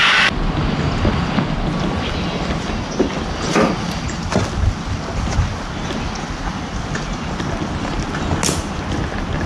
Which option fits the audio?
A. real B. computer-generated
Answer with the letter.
A